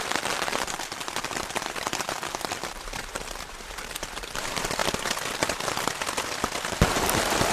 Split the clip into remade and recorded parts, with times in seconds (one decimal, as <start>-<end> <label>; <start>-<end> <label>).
0.0-4.8 remade; 4.8-6.7 recorded; 6.7-7.5 remade